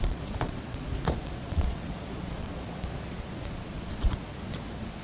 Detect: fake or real fake